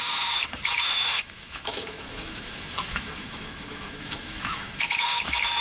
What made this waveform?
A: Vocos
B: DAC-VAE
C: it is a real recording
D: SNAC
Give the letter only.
B